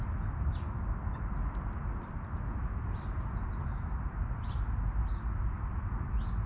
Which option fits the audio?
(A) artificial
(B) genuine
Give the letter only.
B